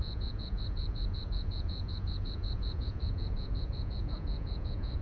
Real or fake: fake